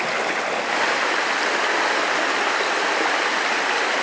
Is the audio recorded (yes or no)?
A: yes